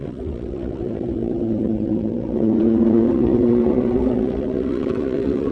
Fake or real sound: fake